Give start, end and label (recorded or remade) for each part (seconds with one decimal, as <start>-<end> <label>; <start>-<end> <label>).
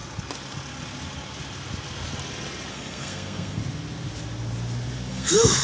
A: 0.0-2.7 recorded; 2.7-3.6 remade; 3.6-5.1 recorded; 5.1-5.6 remade